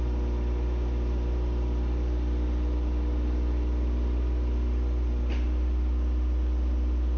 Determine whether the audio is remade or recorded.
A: recorded